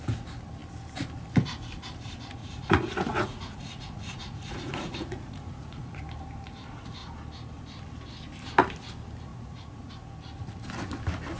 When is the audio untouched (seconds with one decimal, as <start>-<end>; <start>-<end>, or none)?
0.0-2.4; 6.0-9.3; 9.9-11.4